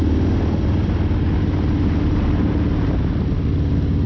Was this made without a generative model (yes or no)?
yes